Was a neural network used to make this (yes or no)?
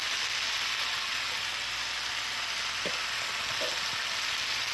no